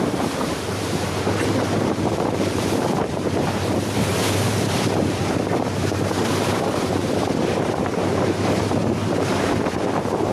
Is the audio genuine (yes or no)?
no